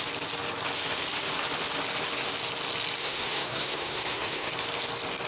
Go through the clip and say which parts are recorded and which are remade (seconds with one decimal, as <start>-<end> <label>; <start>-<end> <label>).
0.0-3.0 recorded; 3.0-4.5 remade; 4.5-5.3 recorded